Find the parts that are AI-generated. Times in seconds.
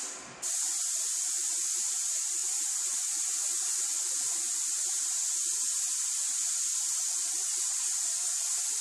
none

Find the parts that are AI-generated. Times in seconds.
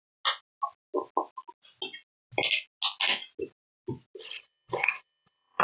4.2-5.6 (codec, HILCodec)